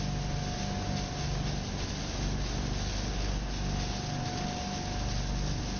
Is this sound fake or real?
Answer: real